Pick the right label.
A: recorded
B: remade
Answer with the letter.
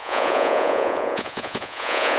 B